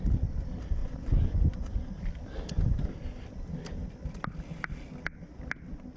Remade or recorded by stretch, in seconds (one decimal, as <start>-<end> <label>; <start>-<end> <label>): 0.0-0.8 recorded; 0.8-1.9 remade; 1.9-6.0 recorded